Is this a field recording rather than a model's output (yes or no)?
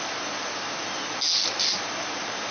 yes